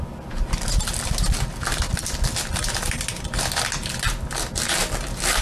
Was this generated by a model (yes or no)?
no